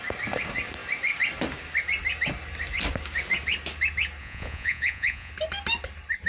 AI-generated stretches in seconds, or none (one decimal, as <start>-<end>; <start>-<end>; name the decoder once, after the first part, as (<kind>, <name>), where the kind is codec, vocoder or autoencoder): 4.2-5.3 (vocoder, Vocos)

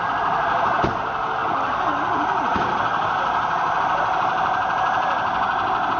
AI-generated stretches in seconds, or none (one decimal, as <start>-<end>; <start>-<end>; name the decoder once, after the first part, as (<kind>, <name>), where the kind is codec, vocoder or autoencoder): none